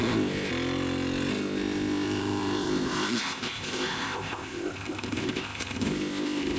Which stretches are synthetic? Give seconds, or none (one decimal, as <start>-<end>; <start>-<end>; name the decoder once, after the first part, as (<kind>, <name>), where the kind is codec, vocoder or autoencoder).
0.0-0.5 (codec, ZipCodec); 1.3-6.6